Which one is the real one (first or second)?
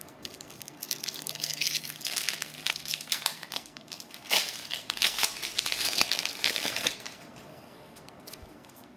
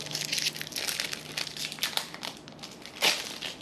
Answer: second